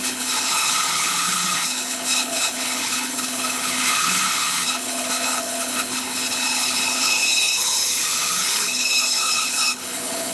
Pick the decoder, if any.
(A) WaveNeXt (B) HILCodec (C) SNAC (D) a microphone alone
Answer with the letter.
B